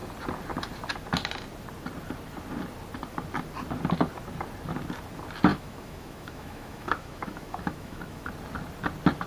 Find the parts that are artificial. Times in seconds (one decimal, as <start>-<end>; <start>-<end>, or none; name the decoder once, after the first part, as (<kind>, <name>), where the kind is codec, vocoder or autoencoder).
5.5-8.3 (autoencoder, DAC-VAE)